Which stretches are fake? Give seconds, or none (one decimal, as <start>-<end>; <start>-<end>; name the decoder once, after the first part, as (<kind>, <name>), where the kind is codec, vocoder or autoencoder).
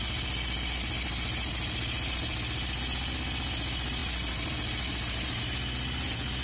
none